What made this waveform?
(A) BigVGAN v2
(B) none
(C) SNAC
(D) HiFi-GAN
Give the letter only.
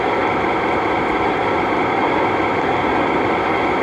B